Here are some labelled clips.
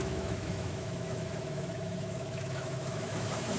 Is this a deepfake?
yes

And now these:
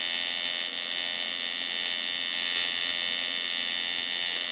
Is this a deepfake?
no